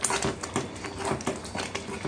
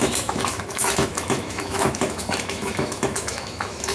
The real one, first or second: first